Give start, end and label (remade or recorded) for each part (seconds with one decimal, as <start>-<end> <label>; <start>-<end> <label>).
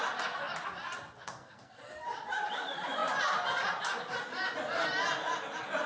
0.0-1.2 recorded; 1.2-1.8 remade; 1.8-5.9 recorded